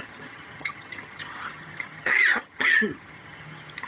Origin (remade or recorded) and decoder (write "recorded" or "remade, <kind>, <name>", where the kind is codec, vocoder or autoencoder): remade, vocoder, HiFi-GAN